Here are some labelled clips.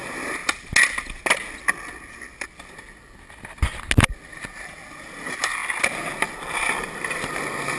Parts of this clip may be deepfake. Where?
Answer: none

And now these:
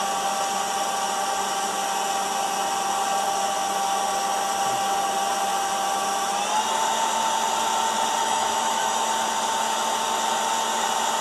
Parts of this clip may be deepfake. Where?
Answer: 8.2-9.1 (autoencoder, DAC-VAE)

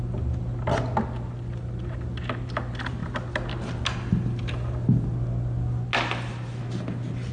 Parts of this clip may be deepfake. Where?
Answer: none

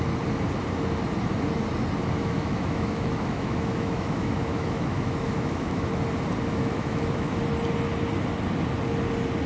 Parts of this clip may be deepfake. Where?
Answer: 2.2-5.9 (autoencoder, DAC-VAE); 6.5-7.4

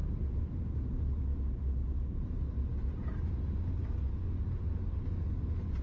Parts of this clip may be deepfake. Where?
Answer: 0.0-0.6 (vocoder, BigVGAN v2)

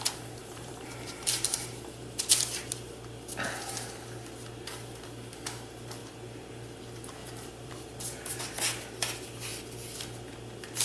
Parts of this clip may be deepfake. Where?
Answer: 0.4-2.9 (vocoder, BigVGAN v2); 7.2-8.4

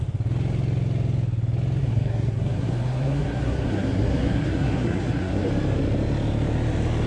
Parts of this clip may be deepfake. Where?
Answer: 1.8-5.5 (codec, SNAC)